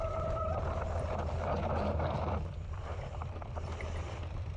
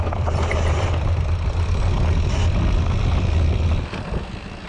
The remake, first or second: first